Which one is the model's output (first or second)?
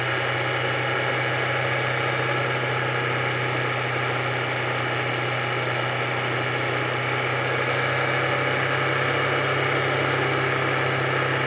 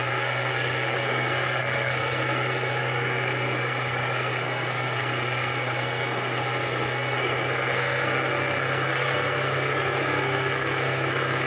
second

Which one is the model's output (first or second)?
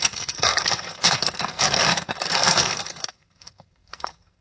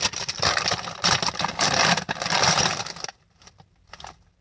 first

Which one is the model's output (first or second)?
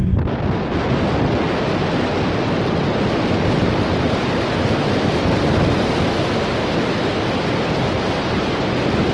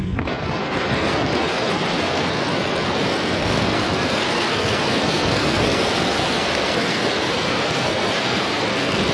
second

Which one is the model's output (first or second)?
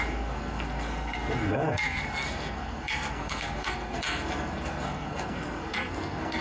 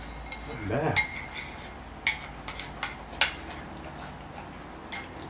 first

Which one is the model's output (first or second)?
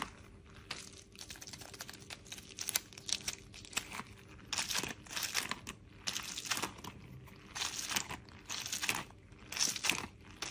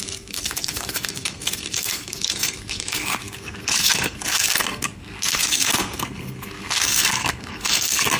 second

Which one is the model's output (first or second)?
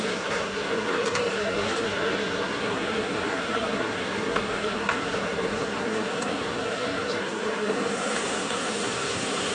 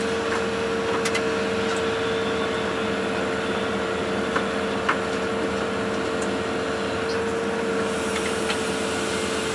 first